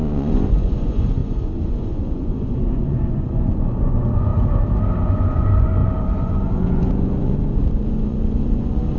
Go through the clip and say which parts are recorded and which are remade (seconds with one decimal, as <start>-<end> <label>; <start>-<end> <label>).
0.0-4.3 remade; 4.3-5.0 recorded; 5.0-9.0 remade